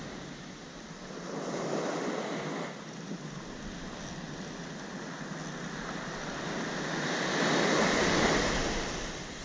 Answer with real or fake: real